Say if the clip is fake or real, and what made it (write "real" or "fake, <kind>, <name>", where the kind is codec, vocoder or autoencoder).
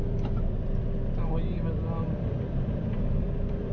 fake, vocoder, BigVGAN v2